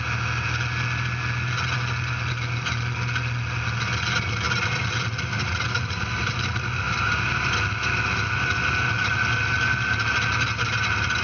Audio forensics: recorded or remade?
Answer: recorded